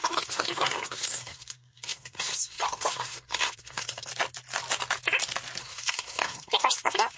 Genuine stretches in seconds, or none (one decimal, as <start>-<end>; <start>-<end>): 4.1-5.6